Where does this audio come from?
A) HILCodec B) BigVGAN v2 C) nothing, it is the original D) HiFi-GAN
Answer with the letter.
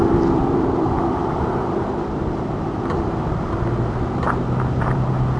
B